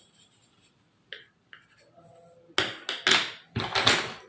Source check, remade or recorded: recorded